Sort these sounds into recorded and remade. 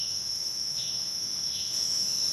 remade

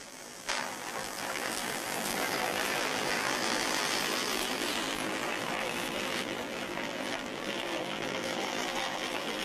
remade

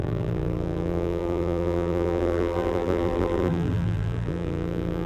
remade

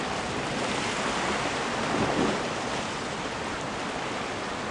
recorded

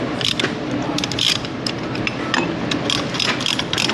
recorded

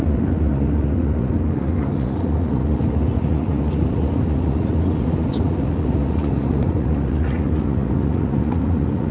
remade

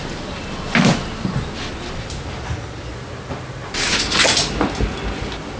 recorded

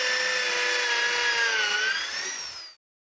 recorded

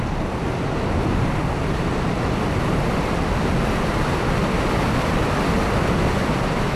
recorded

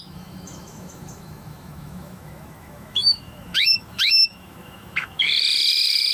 remade